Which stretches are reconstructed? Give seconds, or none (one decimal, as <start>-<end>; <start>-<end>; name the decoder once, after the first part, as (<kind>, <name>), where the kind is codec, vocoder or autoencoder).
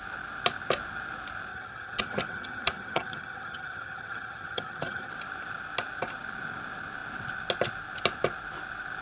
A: 1.5-5.1 (vocoder, HiFi-GAN)